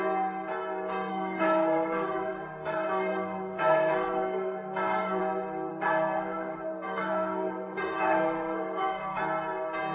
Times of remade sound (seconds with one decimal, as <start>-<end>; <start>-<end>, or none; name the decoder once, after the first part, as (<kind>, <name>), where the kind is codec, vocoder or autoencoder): 1.1-5.2 (codec, SNAC); 5.7-9.2